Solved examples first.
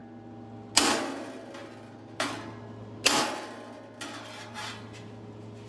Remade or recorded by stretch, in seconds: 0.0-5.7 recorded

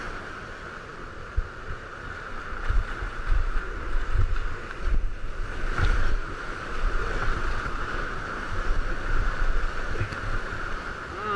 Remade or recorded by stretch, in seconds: 0.0-7.0 recorded; 7.0-7.9 remade; 7.9-11.4 recorded

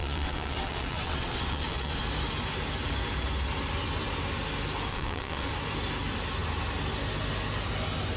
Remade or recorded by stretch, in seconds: 0.0-2.0 remade; 2.0-4.9 recorded; 4.9-5.5 remade; 5.5-8.2 recorded

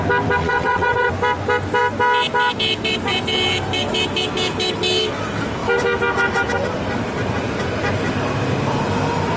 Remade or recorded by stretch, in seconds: 0.0-0.4 recorded; 0.4-1.1 remade; 1.1-9.4 recorded

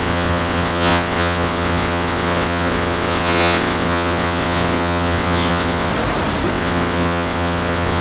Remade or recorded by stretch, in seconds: 0.0-5.9 remade; 5.9-6.5 recorded; 6.5-8.0 remade